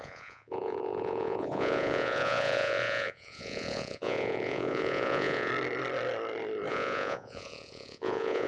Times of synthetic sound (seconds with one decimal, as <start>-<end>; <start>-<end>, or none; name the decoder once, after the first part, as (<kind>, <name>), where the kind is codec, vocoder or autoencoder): 0.0-5.5 (vocoder, Vocos); 6.7-8.5